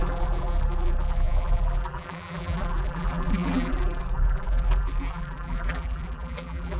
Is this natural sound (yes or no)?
no